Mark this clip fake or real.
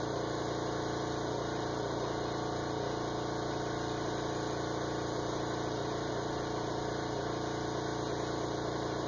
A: real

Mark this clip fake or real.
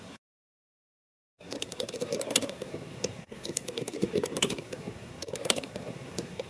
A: fake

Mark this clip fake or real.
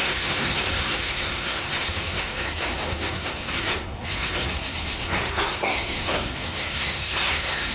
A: fake